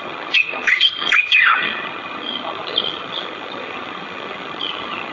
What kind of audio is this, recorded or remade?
remade